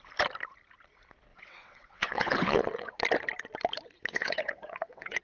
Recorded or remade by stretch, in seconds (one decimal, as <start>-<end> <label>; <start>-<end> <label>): 0.0-1.3 recorded; 1.3-2.9 remade; 2.9-4.1 recorded; 4.1-5.2 remade